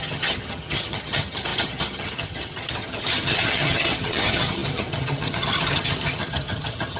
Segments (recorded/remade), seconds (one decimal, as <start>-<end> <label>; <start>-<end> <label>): 0.0-7.0 remade